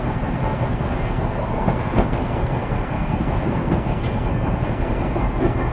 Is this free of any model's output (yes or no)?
no